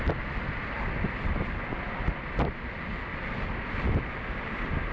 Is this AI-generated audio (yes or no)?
no